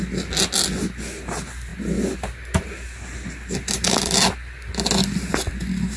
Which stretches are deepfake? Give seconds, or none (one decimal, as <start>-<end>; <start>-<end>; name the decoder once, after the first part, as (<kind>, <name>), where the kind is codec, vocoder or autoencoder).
none